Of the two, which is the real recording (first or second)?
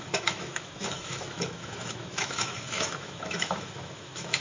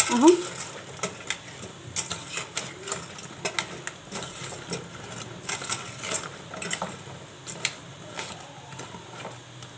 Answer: second